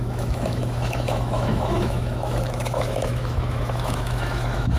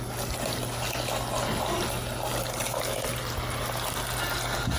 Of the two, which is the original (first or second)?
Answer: second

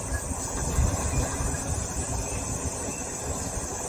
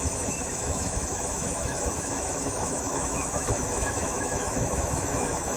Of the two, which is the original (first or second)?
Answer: first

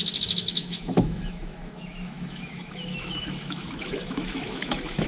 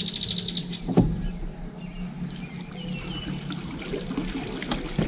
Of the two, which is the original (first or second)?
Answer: second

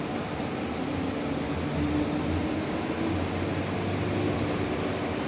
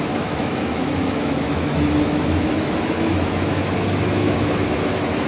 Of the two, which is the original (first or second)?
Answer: first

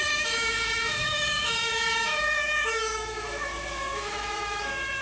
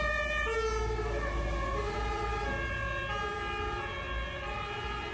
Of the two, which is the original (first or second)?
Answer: second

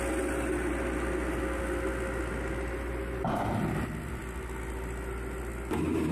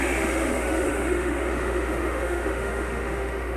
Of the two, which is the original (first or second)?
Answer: first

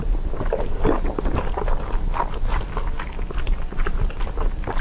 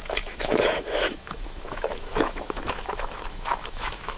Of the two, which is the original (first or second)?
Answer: first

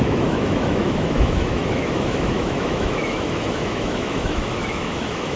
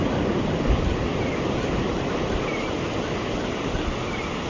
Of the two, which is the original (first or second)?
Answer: second